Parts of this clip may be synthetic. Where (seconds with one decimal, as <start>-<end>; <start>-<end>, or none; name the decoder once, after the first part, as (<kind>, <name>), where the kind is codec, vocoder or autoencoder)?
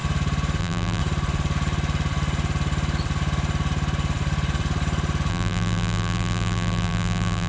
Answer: 0.6-1.0 (vocoder, BigVGAN v2); 5.3-7.5